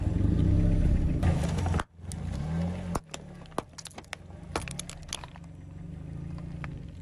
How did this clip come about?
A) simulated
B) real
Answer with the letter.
B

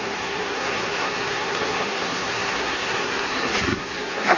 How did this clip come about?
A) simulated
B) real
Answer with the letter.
A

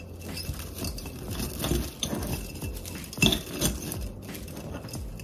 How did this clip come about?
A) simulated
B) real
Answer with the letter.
B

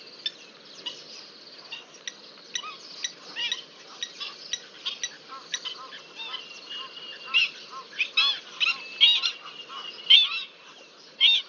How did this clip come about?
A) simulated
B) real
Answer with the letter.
B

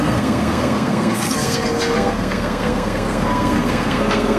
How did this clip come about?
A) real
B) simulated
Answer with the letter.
B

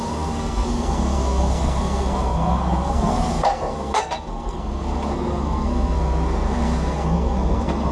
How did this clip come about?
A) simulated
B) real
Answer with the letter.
A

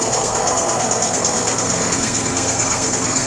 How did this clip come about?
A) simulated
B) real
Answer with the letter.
A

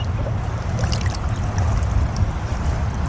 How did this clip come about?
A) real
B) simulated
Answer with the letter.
A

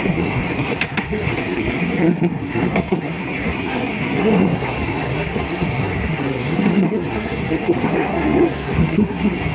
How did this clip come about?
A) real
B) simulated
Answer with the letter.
B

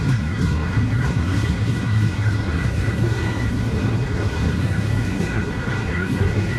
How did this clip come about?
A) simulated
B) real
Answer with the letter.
A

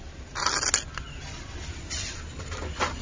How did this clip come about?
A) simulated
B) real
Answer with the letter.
B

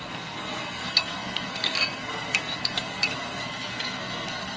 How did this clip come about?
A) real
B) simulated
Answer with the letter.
B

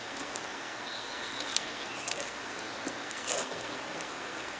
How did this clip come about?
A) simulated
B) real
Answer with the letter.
A